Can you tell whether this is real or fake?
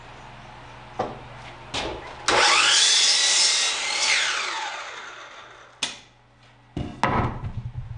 real